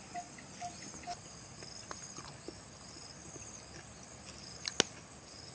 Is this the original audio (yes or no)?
yes